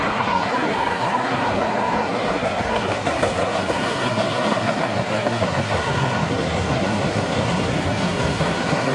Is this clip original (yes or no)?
no